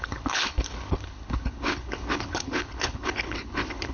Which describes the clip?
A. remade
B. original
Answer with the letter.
A